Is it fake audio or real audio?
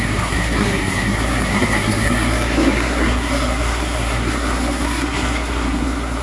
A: fake